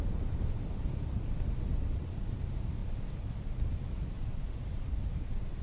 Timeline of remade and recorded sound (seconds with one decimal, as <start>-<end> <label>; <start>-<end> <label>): 0.0-5.6 recorded

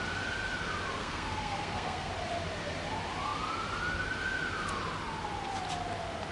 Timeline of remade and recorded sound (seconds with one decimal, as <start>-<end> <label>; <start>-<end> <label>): 0.0-1.0 recorded; 1.0-2.1 remade; 2.1-6.3 recorded

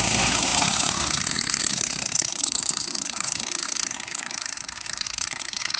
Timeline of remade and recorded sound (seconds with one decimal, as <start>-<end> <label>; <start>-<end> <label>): 0.0-5.8 remade

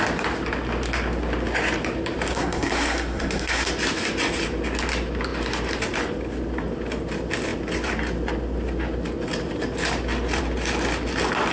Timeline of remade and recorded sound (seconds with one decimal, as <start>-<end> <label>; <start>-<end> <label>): 0.0-2.3 recorded; 2.3-3.7 remade; 3.7-11.5 recorded